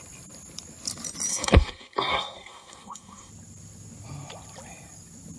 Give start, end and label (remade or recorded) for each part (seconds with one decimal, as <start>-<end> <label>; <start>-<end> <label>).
0.0-1.3 recorded; 1.3-3.3 remade; 3.3-5.4 recorded